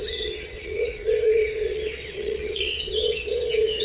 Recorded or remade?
remade